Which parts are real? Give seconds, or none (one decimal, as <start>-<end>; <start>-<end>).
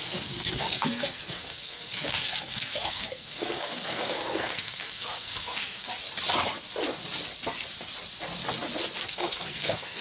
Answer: 5.9-9.1